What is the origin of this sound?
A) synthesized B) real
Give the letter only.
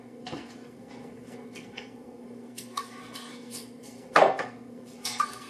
A